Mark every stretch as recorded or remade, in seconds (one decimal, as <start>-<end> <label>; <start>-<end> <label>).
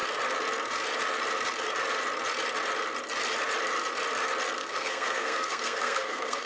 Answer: 0.0-4.6 recorded; 4.6-6.5 remade